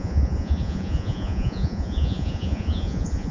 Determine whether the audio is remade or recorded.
remade